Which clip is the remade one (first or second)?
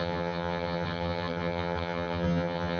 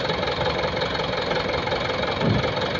first